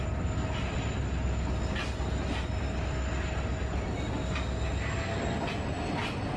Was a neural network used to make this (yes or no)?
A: no